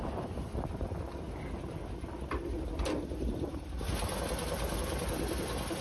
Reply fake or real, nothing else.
real